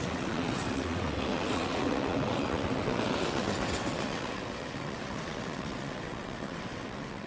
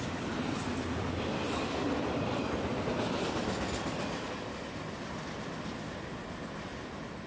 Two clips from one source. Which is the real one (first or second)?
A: second